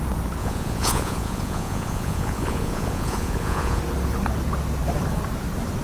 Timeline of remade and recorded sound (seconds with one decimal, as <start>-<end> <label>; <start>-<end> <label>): 0.0-0.4 recorded; 0.4-3.8 remade; 3.8-5.8 recorded